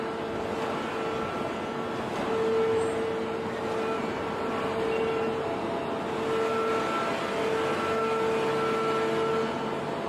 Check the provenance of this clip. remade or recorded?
recorded